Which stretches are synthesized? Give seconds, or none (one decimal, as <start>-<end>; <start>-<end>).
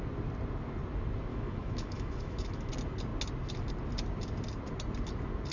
1.3-2.7